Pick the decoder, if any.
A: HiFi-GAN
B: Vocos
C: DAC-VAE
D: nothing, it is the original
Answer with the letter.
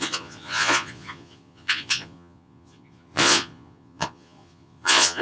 B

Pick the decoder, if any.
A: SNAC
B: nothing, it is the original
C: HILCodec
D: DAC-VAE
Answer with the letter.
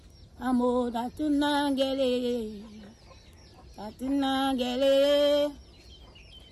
B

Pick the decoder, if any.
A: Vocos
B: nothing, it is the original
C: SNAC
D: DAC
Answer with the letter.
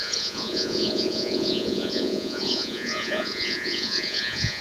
A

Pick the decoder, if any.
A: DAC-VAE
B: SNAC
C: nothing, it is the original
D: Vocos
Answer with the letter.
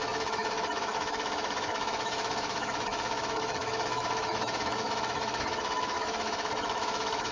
A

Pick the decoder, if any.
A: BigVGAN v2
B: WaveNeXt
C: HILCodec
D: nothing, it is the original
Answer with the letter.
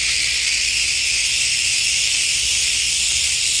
D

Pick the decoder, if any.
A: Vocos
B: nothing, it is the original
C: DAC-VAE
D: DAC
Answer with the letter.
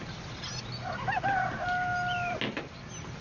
B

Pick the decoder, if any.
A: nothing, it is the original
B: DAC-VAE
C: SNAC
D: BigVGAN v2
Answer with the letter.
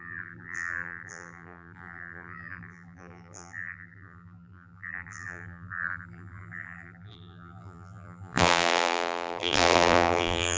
D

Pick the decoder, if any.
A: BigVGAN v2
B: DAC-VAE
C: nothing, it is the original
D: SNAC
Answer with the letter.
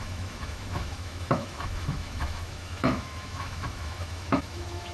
B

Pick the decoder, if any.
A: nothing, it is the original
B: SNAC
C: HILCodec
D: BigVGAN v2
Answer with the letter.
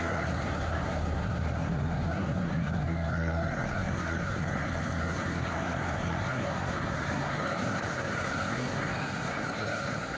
B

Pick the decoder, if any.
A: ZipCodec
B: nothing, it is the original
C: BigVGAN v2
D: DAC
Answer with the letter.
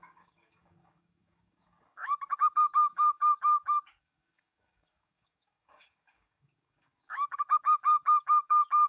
D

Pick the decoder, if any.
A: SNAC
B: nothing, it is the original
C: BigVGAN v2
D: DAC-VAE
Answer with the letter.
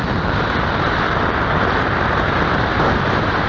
B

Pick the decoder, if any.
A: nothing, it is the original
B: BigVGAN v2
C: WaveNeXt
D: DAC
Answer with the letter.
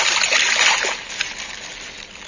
A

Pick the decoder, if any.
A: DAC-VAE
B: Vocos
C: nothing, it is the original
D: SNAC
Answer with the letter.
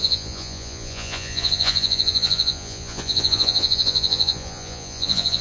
B